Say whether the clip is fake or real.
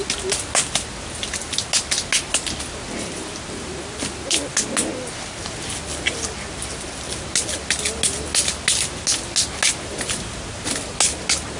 real